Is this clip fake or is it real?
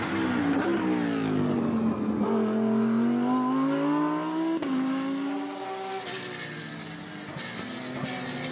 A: real